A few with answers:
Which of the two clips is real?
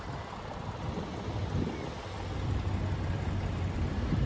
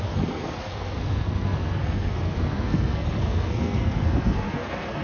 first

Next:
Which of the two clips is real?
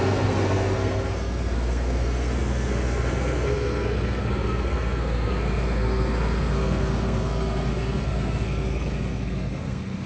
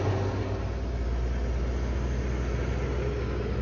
second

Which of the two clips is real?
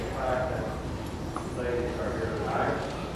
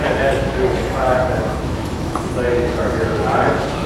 first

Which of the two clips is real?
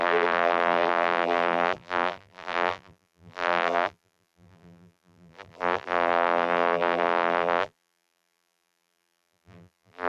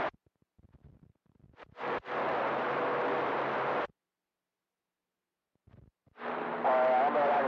second